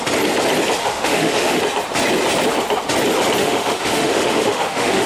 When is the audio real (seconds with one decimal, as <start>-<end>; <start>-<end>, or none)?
0.0-0.8; 1.6-3.4